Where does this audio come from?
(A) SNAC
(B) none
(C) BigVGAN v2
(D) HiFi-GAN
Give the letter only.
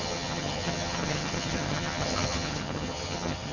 D